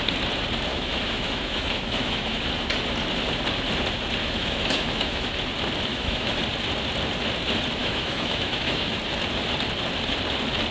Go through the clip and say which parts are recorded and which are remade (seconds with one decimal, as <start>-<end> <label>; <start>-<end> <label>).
0.0-0.7 recorded; 0.7-2.4 remade; 2.4-4.2 recorded; 4.2-5.3 remade; 5.3-5.9 recorded; 5.9-6.4 remade; 6.4-7.8 recorded; 7.8-8.9 remade; 8.9-10.7 recorded